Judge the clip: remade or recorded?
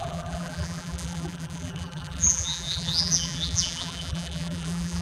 remade